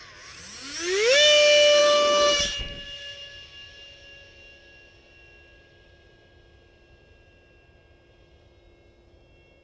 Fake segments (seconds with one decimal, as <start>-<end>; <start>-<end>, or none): 1.8-2.6